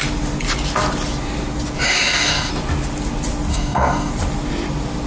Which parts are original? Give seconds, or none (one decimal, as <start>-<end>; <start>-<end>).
0.0-1.9; 2.5-3.5; 4.1-5.1